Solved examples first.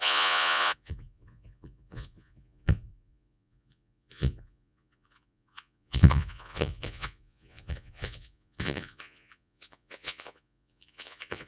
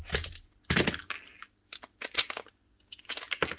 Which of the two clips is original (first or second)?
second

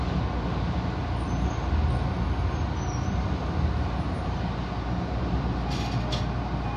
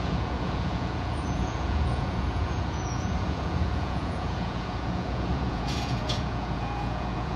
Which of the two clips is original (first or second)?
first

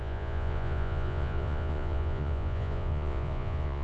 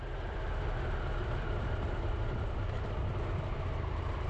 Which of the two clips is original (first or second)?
second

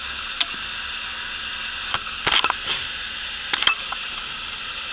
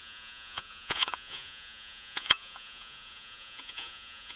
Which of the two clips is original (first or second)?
first